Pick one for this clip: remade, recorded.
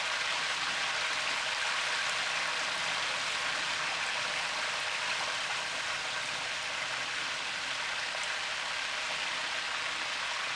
recorded